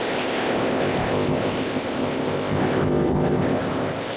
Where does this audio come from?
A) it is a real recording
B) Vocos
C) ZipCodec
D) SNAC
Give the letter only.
C